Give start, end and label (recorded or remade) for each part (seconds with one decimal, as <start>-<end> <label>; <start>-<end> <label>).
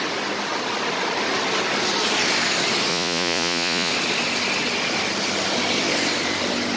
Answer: 0.0-2.9 recorded; 2.9-3.9 remade; 3.9-6.8 recorded